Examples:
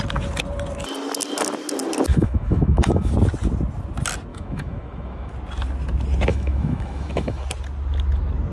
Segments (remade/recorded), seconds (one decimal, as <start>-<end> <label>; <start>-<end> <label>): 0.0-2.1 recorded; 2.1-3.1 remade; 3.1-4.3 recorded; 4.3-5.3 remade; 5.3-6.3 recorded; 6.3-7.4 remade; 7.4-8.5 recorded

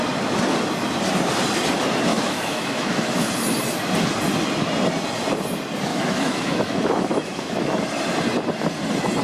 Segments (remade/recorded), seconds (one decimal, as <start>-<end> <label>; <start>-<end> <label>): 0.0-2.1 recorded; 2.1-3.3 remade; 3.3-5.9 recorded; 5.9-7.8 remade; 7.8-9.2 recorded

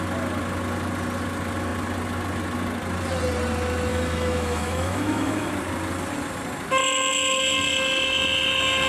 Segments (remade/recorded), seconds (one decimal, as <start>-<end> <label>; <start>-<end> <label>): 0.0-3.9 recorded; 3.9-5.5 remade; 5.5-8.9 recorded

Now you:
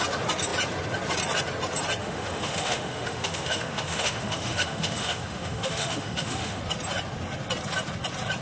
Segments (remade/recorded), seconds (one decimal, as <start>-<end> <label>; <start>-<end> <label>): 0.0-2.0 recorded; 2.0-6.6 remade; 6.6-8.4 recorded